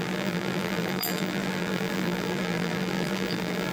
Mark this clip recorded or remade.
remade